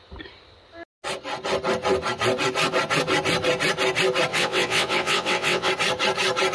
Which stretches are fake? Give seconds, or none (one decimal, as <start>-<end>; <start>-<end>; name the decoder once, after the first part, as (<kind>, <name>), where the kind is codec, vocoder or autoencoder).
4.3-5.7 (vocoder, WaveNeXt)